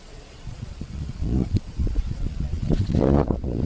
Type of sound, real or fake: fake